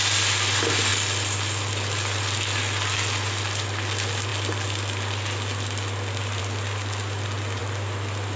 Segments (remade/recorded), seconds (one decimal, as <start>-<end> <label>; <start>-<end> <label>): 0.0-8.4 recorded